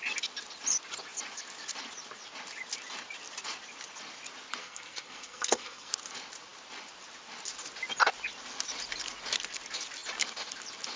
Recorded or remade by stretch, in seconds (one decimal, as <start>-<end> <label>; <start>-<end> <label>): 0.0-4.6 recorded; 4.6-5.9 remade; 5.9-11.0 recorded